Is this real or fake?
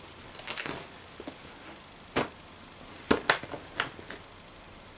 real